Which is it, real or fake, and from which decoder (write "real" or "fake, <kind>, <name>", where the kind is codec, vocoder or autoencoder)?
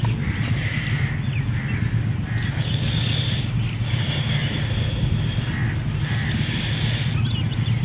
real